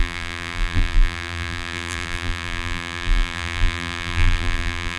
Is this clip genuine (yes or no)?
no